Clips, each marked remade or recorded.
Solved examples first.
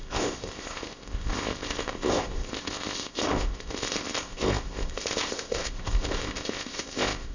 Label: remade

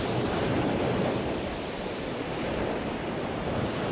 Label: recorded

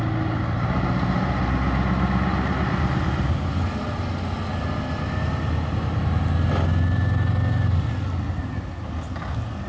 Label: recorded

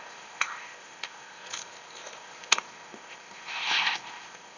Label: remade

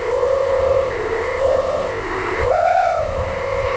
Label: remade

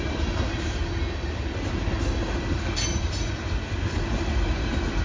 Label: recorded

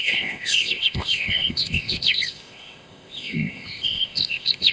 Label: remade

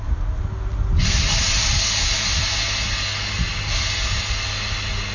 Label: recorded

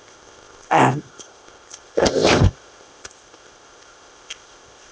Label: remade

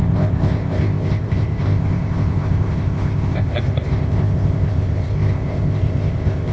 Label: remade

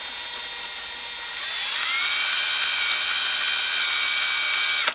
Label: recorded